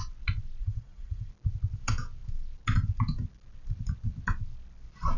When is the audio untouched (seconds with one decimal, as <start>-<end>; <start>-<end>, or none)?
0.0-0.6; 1.3-5.2